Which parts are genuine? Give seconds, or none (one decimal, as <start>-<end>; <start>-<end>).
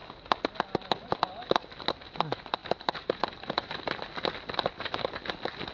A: 0.0-2.6; 3.7-5.7